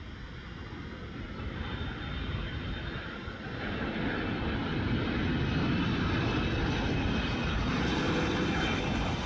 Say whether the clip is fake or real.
real